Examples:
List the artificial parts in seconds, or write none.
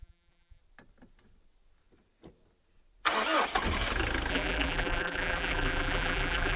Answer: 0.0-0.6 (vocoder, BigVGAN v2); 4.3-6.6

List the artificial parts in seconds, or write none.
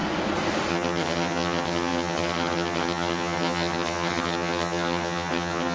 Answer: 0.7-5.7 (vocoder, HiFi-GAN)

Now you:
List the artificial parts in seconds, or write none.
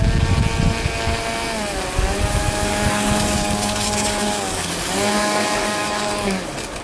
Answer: 2.3-6.8 (codec, DAC)